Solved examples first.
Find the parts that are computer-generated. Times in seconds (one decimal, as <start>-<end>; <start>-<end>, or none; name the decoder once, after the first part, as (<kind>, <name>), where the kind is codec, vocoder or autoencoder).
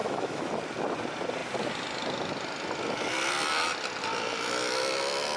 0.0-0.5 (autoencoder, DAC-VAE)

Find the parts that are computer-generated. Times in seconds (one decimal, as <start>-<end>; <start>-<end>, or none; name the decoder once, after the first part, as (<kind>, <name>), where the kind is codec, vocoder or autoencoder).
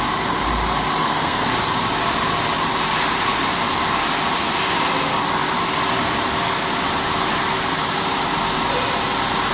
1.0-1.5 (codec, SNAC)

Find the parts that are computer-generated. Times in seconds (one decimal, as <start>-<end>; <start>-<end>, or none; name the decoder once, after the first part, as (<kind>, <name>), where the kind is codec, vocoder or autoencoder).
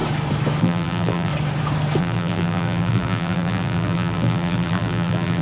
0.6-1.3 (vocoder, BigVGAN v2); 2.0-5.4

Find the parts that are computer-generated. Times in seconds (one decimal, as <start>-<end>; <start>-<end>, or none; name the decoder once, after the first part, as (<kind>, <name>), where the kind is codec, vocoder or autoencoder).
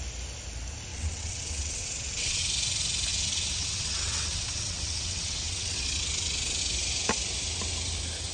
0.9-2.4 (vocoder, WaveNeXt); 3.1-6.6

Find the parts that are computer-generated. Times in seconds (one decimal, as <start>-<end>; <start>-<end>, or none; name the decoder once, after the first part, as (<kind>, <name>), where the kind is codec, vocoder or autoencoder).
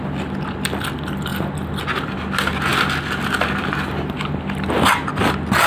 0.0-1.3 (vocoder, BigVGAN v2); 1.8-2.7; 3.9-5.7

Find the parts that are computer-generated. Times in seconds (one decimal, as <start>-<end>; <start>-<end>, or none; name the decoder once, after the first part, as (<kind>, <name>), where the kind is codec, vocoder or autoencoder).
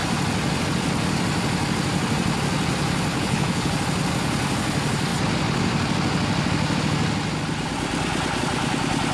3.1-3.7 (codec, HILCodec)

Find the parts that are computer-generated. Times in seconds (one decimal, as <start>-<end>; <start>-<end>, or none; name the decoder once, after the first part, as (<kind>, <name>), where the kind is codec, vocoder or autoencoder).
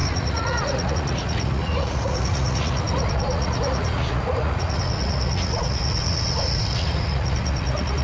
0.0-8.0 (vocoder, Vocos)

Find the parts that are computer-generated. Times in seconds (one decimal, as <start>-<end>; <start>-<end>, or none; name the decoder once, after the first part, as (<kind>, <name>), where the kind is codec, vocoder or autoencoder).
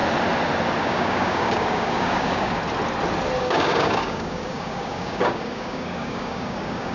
0.8-2.6 (codec, DAC); 3.4-6.9